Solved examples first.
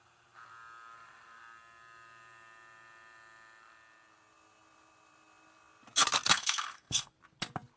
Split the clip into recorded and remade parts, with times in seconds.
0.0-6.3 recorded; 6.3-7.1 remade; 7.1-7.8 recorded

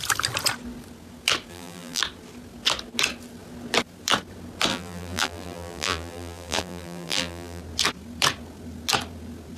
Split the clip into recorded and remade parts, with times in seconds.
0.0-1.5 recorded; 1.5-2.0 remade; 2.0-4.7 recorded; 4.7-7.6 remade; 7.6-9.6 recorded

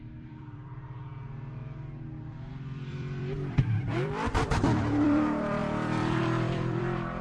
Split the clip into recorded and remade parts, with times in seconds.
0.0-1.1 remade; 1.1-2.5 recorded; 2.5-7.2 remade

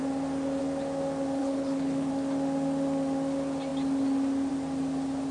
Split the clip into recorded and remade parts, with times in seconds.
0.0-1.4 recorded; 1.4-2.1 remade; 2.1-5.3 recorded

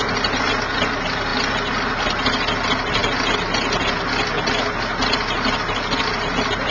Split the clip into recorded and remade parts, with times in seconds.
0.0-6.7 recorded

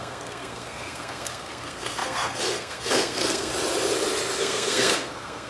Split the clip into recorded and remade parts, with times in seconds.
0.0-3.5 remade; 3.5-4.4 recorded; 4.4-5.5 remade

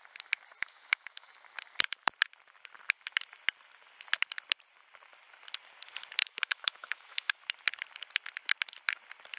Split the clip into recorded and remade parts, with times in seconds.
0.0-0.6 recorded; 0.6-1.3 remade; 1.3-6.2 recorded; 6.2-7.3 remade; 7.3-9.4 recorded

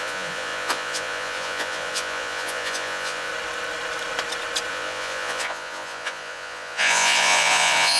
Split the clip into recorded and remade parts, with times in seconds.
0.0-3.3 remade; 3.3-4.7 recorded; 4.7-8.0 remade